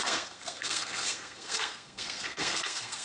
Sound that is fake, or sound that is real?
fake